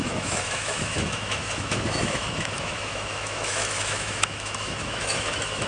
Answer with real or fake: fake